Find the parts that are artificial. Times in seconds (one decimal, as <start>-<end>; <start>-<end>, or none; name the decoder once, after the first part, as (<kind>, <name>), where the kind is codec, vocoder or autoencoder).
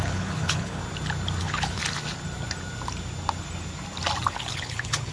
0.0-0.8 (codec, HILCodec); 1.4-1.8; 4.3-5.1